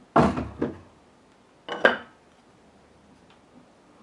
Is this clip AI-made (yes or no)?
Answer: no